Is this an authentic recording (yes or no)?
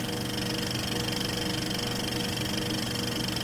yes